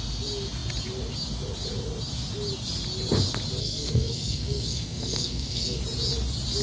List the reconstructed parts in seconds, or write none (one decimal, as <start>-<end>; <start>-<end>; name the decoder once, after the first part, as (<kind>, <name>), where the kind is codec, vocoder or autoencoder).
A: 3.6-5.8 (codec, SNAC)